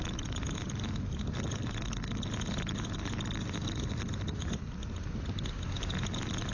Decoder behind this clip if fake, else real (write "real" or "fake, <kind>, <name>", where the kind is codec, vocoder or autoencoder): real